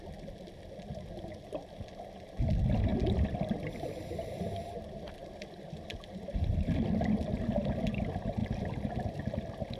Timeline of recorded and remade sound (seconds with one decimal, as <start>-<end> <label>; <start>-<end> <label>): 0.0-2.9 recorded; 2.9-4.6 remade; 4.6-5.2 recorded; 5.2-7.4 remade; 7.4-8.4 recorded; 8.4-9.2 remade; 9.2-9.8 recorded